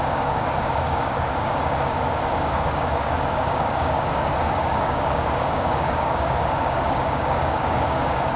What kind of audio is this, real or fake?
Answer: fake